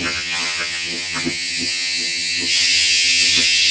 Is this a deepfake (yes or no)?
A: yes